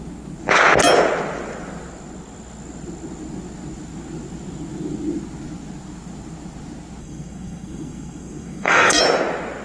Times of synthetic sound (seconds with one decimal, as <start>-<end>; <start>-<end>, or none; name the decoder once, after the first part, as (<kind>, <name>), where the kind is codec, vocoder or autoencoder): 7.0-9.0 (codec, SNAC)